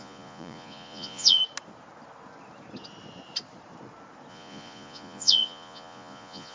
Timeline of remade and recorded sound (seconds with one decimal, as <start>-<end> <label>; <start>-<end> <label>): 0.0-1.4 remade; 1.4-4.3 recorded; 4.3-6.5 remade